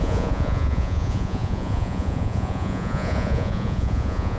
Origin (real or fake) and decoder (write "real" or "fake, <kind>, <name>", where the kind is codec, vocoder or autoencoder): fake, vocoder, Vocos